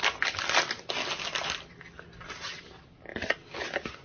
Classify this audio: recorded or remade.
recorded